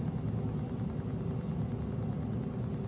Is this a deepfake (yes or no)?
no